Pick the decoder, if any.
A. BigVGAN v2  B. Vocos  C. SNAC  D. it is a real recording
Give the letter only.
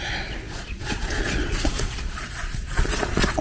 B